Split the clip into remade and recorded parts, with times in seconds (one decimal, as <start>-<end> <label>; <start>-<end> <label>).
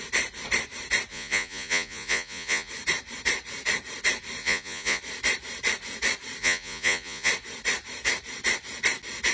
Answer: 0.0-1.1 recorded; 1.1-2.7 remade; 2.7-4.4 recorded; 4.4-5.0 remade; 5.0-6.4 recorded; 6.4-7.3 remade; 7.3-9.3 recorded